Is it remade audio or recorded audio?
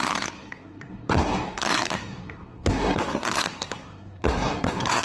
remade